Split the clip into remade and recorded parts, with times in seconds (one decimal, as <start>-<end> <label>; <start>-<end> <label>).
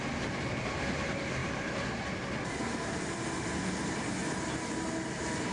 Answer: 0.0-5.5 recorded